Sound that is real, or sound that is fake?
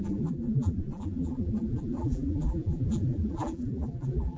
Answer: fake